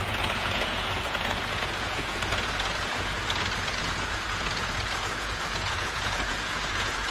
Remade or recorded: remade